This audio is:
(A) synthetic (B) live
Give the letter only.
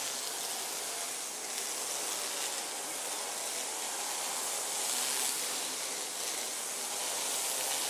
B